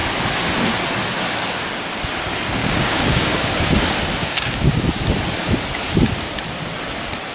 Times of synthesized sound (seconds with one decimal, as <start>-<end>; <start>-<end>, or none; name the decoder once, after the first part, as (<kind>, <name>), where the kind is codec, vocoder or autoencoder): 2.6-3.5 (codec, DAC); 4.2-4.9